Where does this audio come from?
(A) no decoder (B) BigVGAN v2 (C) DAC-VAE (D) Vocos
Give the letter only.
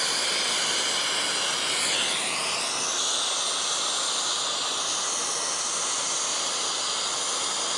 A